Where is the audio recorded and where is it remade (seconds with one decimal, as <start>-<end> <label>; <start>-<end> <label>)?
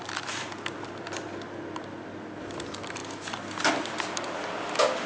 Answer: 0.0-5.1 recorded